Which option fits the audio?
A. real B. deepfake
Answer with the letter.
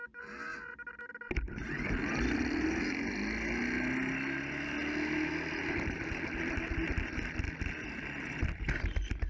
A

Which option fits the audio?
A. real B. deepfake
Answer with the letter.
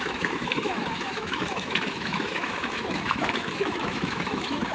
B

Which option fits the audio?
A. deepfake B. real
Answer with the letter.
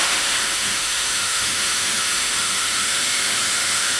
A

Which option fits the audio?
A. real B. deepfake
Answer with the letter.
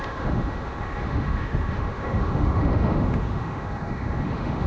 B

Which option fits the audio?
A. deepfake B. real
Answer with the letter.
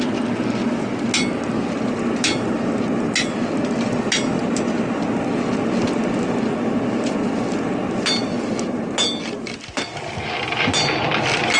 B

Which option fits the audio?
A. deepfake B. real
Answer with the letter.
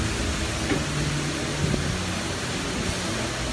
B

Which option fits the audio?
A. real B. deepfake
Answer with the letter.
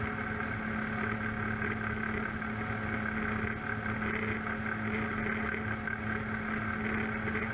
A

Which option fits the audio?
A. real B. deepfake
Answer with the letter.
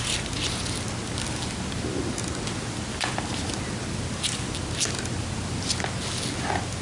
A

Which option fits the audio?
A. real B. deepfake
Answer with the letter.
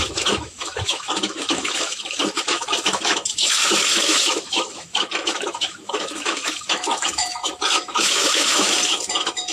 B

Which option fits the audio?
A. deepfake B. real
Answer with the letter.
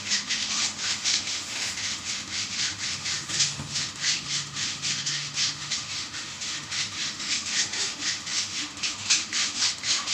A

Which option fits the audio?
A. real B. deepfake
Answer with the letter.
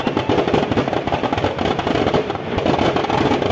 A